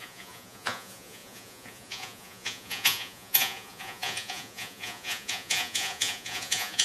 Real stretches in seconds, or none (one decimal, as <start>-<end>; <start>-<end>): none